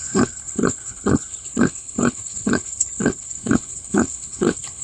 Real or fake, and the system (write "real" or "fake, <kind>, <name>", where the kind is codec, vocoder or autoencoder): fake, codec, HILCodec